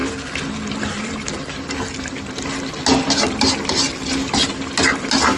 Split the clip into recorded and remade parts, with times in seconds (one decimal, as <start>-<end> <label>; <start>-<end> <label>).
0.0-5.4 recorded